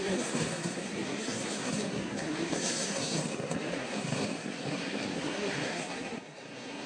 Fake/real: fake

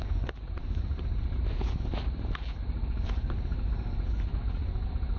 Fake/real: fake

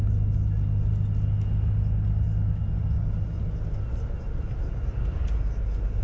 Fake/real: real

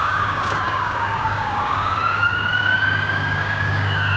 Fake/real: fake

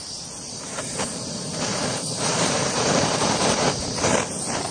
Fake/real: fake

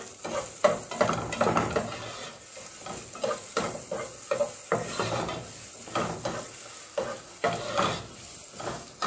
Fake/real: real